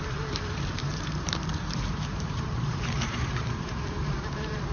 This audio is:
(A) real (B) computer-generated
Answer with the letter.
B